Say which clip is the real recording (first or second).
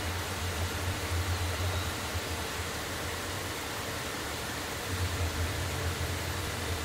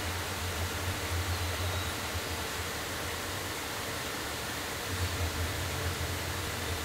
second